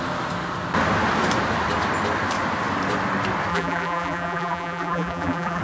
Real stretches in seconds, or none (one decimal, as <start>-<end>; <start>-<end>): 0.0-3.5